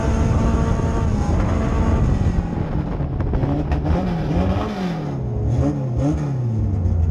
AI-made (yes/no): no